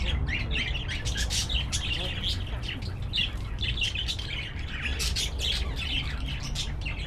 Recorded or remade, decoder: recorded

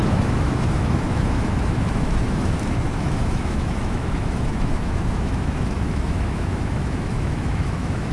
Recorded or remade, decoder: remade, autoencoder, DAC-VAE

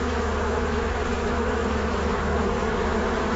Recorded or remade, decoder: remade, autoencoder, DAC-VAE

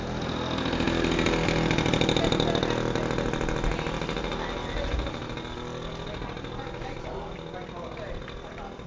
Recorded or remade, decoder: recorded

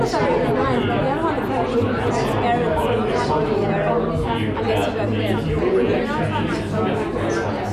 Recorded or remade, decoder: recorded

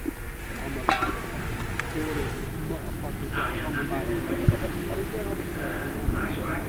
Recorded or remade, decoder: recorded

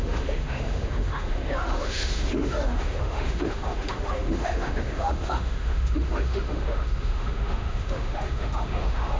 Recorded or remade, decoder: remade, autoencoder, DAC-VAE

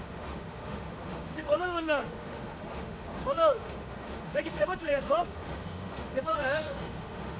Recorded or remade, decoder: remade, autoencoder, DAC-VAE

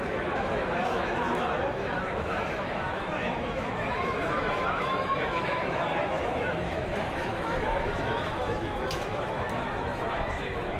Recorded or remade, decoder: remade, autoencoder, DAC-VAE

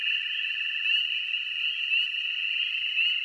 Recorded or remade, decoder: recorded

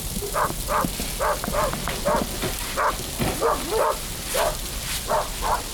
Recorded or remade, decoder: recorded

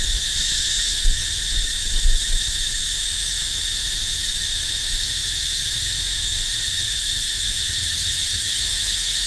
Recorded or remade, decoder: remade, autoencoder, DAC-VAE